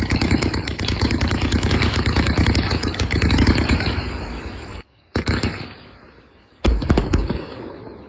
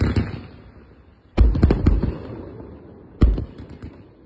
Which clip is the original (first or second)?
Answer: second